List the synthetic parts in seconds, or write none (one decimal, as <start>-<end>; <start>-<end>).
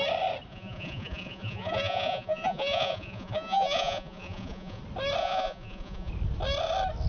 0.5-4.8; 5.2-6.1